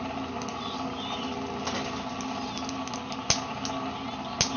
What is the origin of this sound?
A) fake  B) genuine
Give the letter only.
B